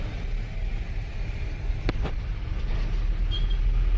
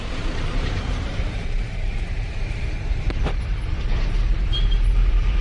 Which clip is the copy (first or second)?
second